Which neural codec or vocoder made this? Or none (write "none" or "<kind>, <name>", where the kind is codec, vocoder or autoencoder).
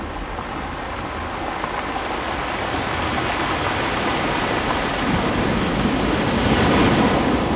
none